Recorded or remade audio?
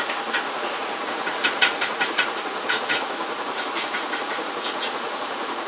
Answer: remade